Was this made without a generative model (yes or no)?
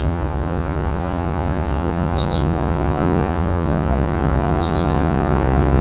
no